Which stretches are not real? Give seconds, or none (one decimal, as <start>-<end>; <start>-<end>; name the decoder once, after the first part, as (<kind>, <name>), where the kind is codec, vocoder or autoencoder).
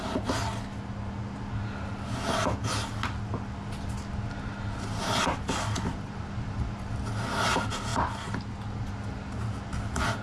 none